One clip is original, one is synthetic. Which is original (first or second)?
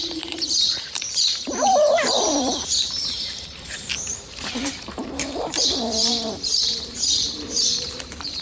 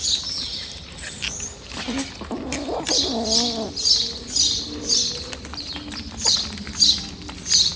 second